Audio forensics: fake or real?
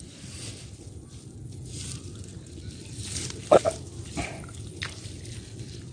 real